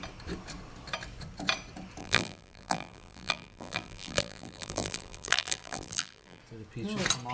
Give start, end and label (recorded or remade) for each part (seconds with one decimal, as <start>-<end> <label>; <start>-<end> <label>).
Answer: 0.0-2.0 recorded; 2.0-6.4 remade; 6.4-7.3 recorded